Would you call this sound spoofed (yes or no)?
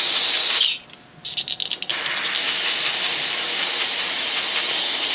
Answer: no